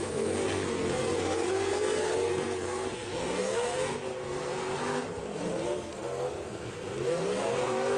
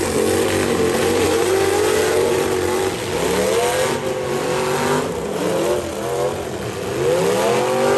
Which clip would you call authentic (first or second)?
second